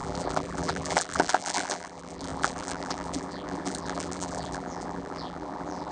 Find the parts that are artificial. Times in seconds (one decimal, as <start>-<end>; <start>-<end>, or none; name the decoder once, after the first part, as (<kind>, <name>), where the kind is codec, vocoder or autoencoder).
0.0-5.9 (vocoder, BigVGAN v2)